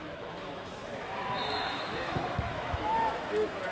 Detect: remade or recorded remade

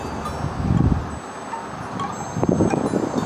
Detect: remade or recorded recorded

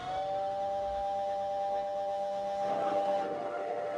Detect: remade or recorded remade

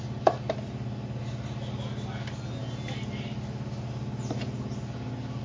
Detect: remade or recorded recorded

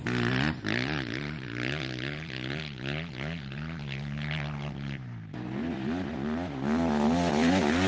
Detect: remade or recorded recorded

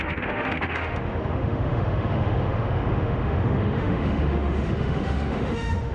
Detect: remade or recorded remade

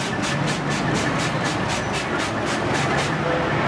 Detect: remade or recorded recorded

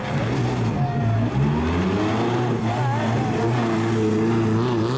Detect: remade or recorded recorded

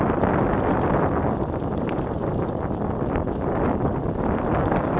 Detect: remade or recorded recorded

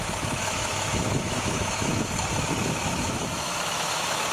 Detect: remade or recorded remade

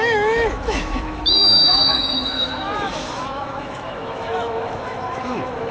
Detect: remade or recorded remade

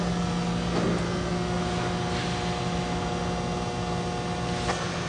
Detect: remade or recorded recorded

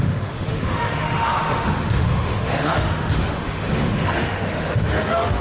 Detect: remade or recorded remade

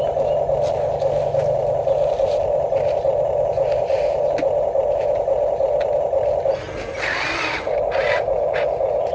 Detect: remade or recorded recorded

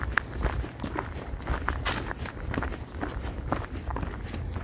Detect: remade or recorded recorded